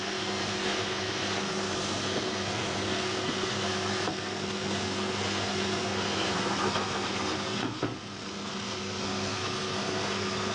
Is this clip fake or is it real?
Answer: fake